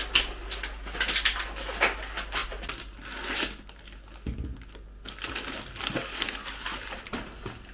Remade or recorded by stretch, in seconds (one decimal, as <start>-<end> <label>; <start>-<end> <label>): 0.0-7.7 recorded

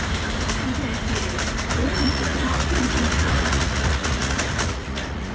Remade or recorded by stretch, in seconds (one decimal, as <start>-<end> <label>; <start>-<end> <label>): 0.0-1.8 recorded; 1.8-5.3 remade

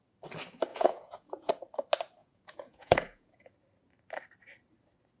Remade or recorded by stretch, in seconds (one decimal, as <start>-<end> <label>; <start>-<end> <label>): 0.0-0.7 recorded; 0.7-1.5 remade; 1.5-2.2 recorded; 2.2-3.5 remade; 3.5-5.2 recorded

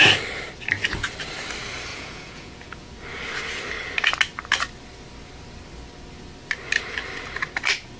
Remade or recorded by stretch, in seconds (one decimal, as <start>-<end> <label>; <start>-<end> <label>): 0.0-1.9 recorded; 1.9-2.9 remade; 2.9-8.0 recorded

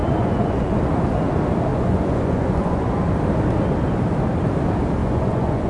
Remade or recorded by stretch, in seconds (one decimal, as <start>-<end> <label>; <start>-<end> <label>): 0.0-0.8 remade; 0.8-1.7 recorded; 1.7-2.9 remade; 2.9-5.0 recorded; 5.0-5.7 remade

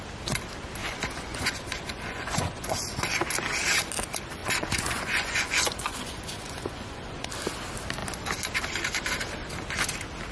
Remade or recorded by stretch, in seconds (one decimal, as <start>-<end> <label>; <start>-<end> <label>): 0.0-0.8 recorded; 0.8-3.3 remade; 3.3-4.4 recorded; 4.4-7.3 remade; 7.3-10.3 recorded

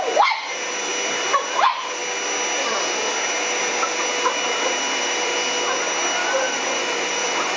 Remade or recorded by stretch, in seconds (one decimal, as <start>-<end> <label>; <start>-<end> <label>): 0.0-6.2 recorded; 6.2-7.6 remade